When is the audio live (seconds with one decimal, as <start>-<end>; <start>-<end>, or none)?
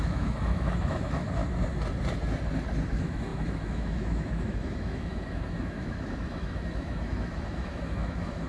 1.4-2.9